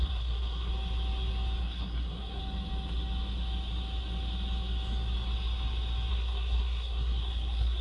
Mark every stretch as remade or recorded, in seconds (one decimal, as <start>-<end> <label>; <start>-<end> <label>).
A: 0.0-0.7 remade; 0.7-1.6 recorded; 1.6-2.4 remade; 2.4-6.1 recorded; 6.1-7.8 remade